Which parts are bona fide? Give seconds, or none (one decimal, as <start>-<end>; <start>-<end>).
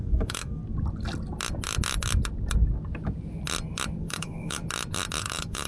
0.6-4.0; 4.6-5.2